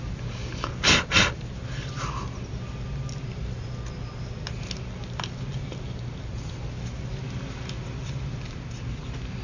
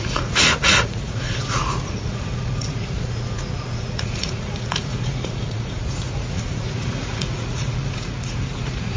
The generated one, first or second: second